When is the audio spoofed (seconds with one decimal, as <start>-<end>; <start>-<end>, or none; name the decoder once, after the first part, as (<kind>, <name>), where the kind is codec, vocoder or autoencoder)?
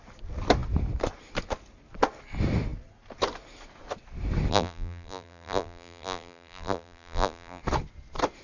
4.5-7.6 (vocoder, BigVGAN v2)